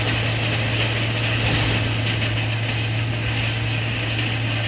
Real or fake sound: real